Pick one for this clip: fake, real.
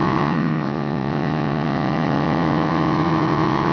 fake